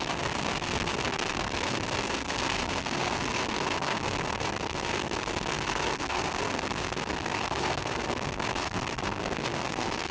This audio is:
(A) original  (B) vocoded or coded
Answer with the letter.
B